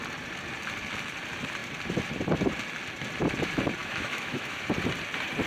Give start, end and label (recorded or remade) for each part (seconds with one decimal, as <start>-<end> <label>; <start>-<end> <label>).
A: 0.0-3.8 recorded; 3.8-4.7 remade; 4.7-5.5 recorded